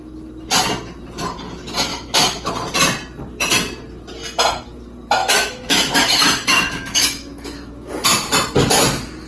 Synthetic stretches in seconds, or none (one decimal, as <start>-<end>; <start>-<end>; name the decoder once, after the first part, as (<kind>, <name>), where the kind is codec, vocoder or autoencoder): 1.9-2.5 (autoencoder, DAC-VAE); 5.2-7.9